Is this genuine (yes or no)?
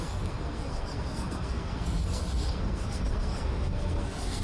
no